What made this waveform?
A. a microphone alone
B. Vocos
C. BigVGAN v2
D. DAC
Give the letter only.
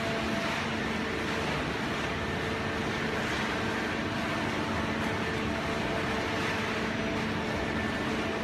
A